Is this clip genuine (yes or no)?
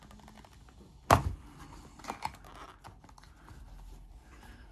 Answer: yes